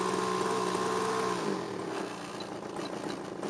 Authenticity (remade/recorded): recorded